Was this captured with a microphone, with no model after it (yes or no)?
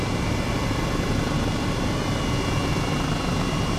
yes